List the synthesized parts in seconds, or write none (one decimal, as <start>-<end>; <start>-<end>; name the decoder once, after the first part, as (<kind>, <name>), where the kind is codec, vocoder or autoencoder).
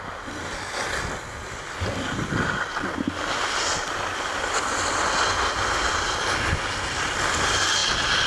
none